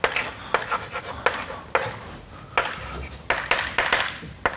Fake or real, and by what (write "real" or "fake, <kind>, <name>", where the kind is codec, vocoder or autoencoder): real